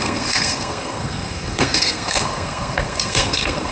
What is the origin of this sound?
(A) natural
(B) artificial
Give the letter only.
B